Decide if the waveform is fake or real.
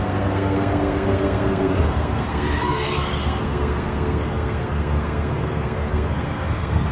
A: fake